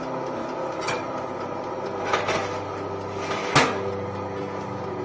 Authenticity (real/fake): real